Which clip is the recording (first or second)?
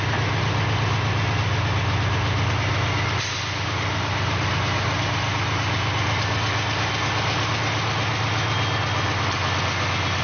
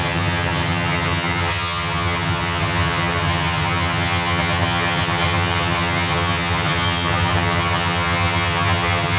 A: first